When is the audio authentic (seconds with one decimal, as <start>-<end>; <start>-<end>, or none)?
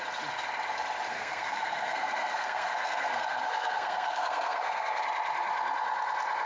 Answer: 0.0-1.1; 5.0-6.5